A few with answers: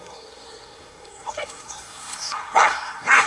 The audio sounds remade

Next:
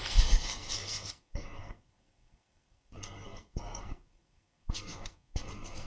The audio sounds remade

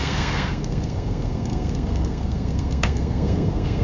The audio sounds remade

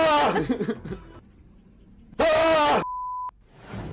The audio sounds recorded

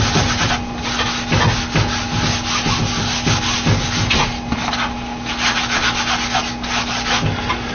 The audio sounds recorded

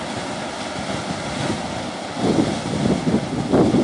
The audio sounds recorded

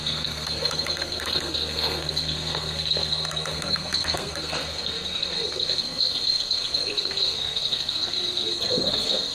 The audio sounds remade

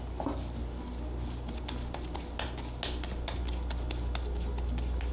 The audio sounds recorded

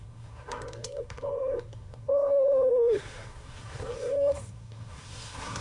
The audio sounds remade